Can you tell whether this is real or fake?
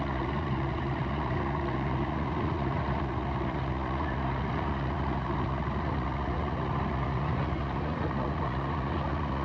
fake